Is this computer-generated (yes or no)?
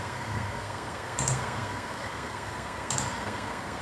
yes